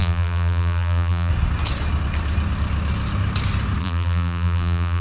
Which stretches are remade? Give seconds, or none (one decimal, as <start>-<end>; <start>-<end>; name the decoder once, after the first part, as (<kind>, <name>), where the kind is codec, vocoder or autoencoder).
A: 0.0-1.3 (vocoder, BigVGAN v2); 3.8-5.0